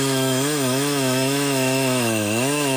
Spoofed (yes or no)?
yes